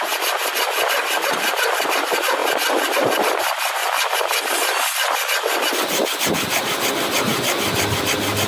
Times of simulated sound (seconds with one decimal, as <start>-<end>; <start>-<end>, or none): none